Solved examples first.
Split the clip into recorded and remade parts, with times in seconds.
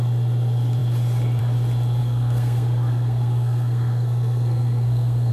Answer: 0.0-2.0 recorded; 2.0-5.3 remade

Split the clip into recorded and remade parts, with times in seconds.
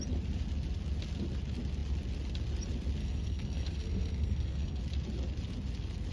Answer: 0.0-3.0 recorded; 3.0-4.8 remade; 4.8-6.1 recorded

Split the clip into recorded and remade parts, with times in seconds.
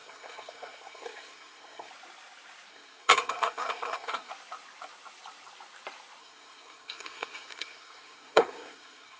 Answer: 0.0-1.9 remade; 1.9-2.7 recorded; 2.7-4.3 remade; 4.3-6.2 recorded; 6.2-9.2 remade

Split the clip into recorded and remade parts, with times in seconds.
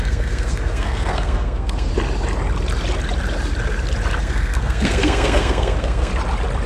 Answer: 0.0-1.9 remade; 1.9-4.2 recorded; 4.2-6.1 remade; 6.1-6.7 recorded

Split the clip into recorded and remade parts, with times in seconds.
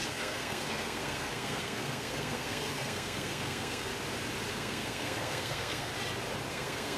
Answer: 0.0-3.9 remade; 3.9-4.5 recorded; 4.5-5.9 remade; 5.9-6.5 recorded; 6.5-7.0 remade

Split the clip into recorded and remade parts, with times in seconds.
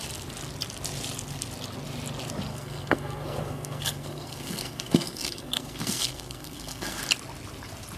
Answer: 0.0-2.5 recorded; 2.5-7.0 remade; 7.0-8.0 recorded